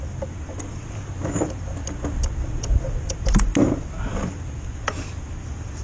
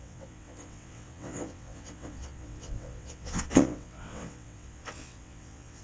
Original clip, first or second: first